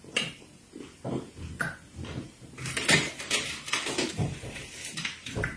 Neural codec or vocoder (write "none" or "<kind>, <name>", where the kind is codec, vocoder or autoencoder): vocoder, BigVGAN v2